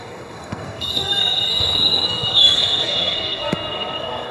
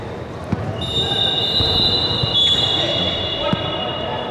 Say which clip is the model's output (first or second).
first